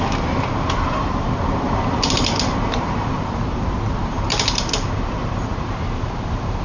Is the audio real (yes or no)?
no